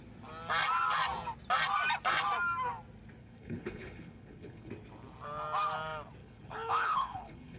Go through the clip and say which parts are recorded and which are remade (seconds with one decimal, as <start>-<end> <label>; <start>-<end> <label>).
0.0-3.2 recorded; 3.2-4.7 remade; 4.7-6.2 recorded; 6.2-7.6 remade